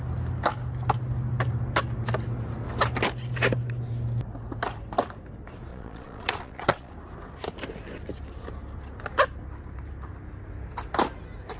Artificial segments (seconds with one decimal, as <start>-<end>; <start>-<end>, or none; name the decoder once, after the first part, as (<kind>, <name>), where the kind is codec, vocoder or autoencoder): 5.7-6.9 (vocoder, Vocos)